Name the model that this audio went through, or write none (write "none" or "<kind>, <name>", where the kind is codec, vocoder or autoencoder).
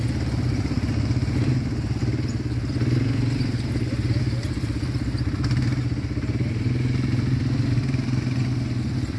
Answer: none